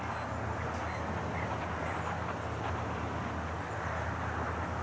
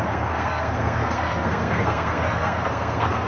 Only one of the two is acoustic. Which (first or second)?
first